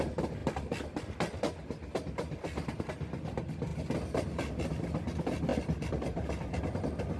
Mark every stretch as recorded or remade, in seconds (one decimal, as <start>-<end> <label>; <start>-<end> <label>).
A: 0.0-5.5 recorded; 5.5-6.7 remade; 6.7-7.2 recorded